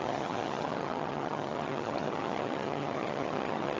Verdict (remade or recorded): remade